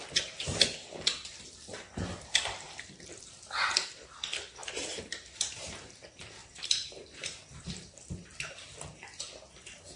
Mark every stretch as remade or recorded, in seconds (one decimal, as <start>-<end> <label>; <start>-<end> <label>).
0.0-4.6 recorded; 4.6-5.7 remade; 5.7-6.4 recorded; 6.4-7.9 remade; 7.9-10.0 recorded